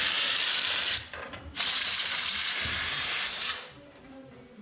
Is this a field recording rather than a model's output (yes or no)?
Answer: no